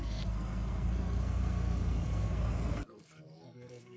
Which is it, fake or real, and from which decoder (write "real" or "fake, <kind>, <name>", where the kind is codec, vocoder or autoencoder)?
fake, codec, SNAC